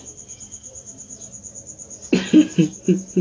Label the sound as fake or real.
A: real